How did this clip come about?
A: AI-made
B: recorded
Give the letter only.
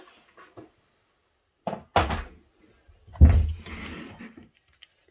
B